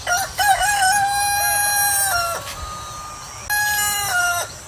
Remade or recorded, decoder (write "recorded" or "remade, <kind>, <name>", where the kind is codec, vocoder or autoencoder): recorded